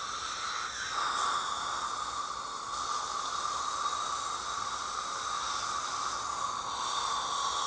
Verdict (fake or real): real